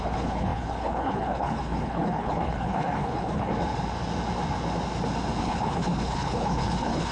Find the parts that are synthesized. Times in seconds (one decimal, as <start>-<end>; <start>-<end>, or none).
0.0-3.5; 5.4-7.1